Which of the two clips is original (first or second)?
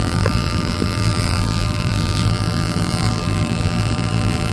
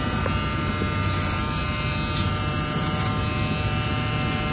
second